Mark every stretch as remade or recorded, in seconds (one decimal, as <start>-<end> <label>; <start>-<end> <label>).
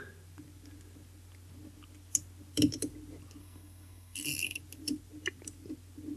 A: 0.0-3.4 recorded; 3.4-4.6 remade; 4.6-6.2 recorded